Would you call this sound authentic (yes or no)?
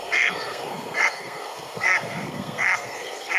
no